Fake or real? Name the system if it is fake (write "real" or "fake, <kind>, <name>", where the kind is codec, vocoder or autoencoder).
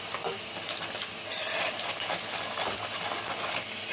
real